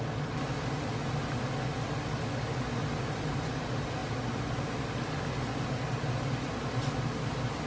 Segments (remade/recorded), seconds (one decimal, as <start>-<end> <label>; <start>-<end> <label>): 0.0-7.7 recorded